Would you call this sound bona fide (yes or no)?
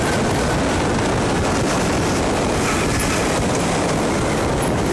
yes